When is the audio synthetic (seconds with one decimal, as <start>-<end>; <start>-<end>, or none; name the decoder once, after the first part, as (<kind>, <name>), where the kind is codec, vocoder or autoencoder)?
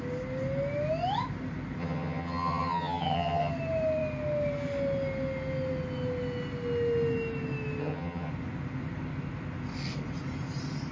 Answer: 1.8-3.5 (vocoder, HiFi-GAN); 7.8-8.3